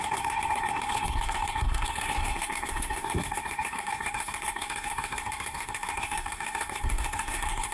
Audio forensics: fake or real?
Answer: fake